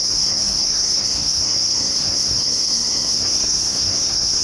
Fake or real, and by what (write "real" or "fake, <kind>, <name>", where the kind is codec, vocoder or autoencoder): fake, codec, SNAC